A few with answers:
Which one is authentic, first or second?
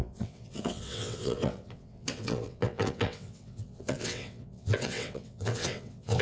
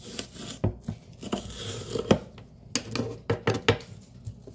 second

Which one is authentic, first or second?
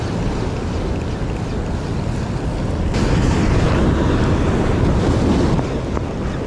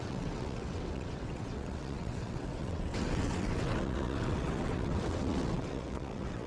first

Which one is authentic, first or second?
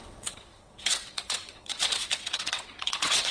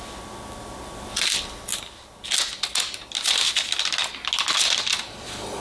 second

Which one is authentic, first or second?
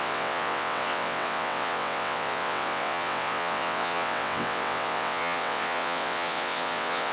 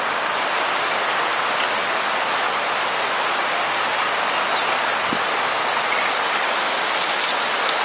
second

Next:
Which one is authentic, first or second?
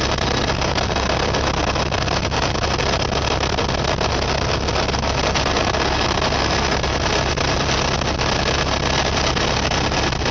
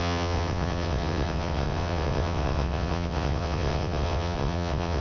first